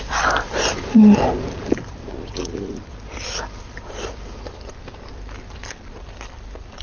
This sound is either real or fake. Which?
fake